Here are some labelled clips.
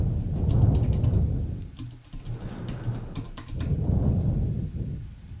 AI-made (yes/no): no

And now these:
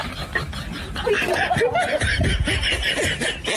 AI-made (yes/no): no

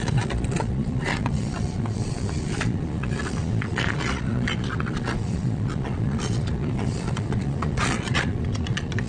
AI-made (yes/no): yes